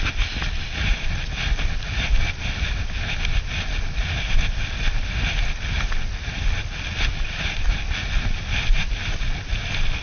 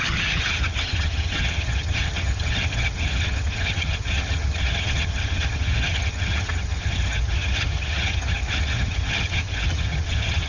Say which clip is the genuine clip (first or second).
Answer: first